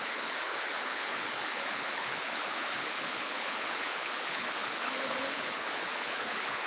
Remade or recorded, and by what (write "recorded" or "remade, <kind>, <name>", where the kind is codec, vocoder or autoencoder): remade, codec, HILCodec